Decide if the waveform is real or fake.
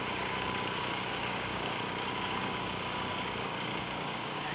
fake